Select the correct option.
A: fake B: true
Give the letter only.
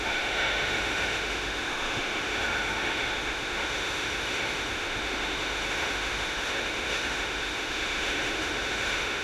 A